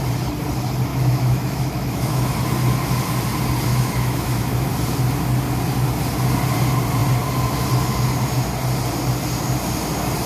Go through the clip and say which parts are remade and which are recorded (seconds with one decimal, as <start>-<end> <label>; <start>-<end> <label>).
0.0-0.9 recorded; 0.9-2.3 remade; 2.3-3.7 recorded; 3.7-4.5 remade; 4.5-10.3 recorded